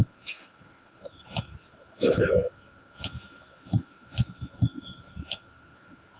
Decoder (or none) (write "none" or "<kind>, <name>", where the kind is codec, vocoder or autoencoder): autoencoder, DAC-VAE